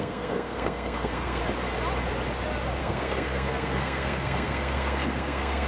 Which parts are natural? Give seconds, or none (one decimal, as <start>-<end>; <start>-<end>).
1.4-2.8